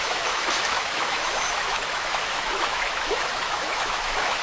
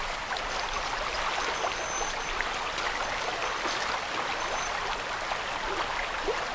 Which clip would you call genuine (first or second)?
second